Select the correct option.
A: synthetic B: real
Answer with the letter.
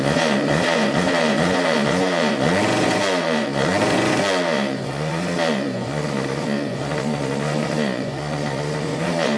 A